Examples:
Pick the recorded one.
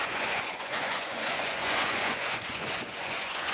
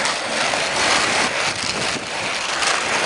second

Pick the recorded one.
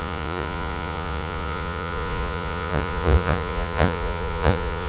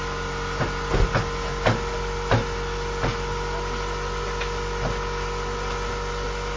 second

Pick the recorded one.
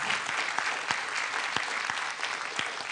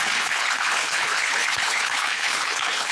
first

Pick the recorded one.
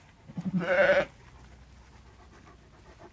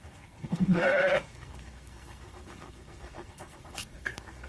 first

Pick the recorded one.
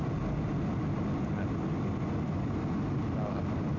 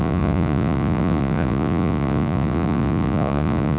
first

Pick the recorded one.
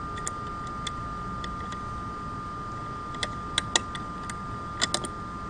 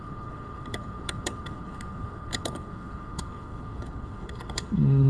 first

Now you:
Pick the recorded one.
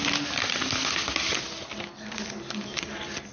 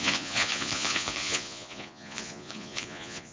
first